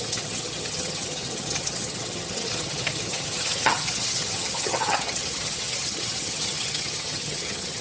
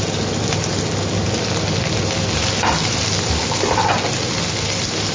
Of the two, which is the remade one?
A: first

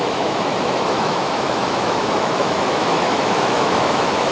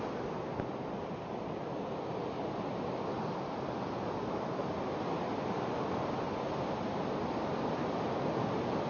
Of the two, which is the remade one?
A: first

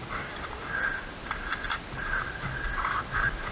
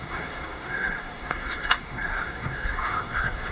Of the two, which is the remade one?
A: second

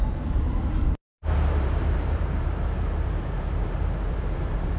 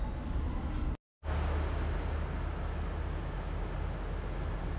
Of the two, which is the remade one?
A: first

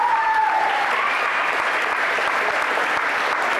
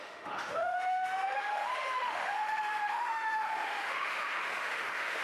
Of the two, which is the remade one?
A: second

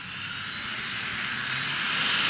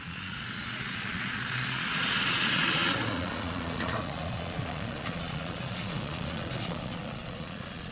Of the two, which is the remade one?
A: second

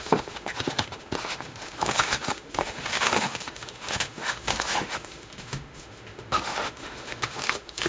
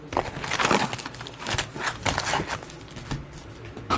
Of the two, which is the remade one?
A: first